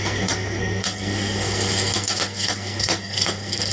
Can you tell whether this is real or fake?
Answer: fake